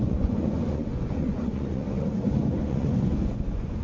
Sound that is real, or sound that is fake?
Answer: fake